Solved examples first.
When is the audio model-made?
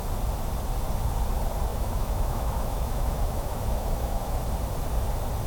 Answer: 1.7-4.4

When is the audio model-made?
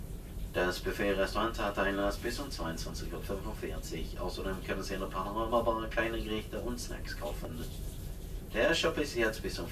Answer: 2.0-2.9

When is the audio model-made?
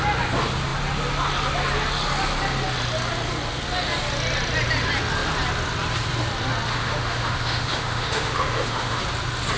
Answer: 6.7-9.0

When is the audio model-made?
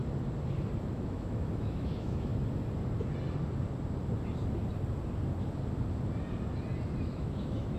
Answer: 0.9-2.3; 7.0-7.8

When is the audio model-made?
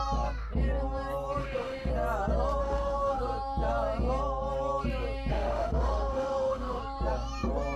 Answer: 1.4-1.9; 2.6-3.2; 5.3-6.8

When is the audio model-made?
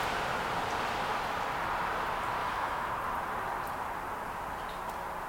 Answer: 2.4-2.9